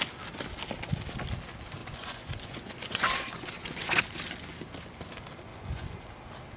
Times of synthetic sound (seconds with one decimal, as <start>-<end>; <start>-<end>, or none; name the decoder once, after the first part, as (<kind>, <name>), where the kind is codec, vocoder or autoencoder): 1.8-4.0 (vocoder, Vocos); 5.5-6.1